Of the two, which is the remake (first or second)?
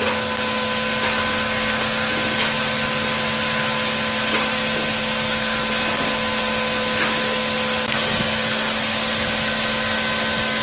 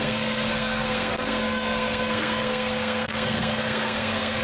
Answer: second